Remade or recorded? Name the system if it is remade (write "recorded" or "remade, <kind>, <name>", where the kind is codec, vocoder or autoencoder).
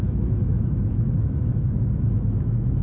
remade, autoencoder, DAC-VAE